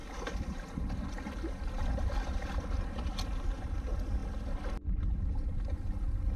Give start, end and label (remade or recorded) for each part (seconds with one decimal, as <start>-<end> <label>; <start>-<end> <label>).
0.0-6.4 recorded